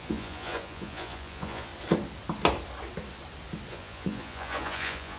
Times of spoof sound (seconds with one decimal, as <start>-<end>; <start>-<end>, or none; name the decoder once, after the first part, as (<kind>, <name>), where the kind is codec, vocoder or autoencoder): 0.0-1.7 (vocoder, Vocos); 3.7-5.2